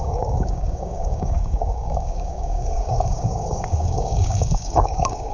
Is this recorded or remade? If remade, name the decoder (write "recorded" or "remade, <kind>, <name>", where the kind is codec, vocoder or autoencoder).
remade, codec, DAC